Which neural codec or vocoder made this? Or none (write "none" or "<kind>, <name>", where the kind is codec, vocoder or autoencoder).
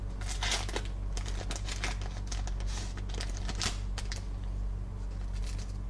none